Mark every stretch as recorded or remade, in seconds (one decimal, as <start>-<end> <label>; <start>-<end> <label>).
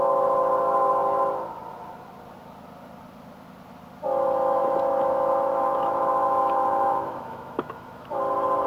0.0-4.6 recorded; 4.6-8.2 remade; 8.2-8.7 recorded